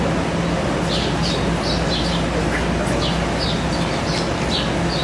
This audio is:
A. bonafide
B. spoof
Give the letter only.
A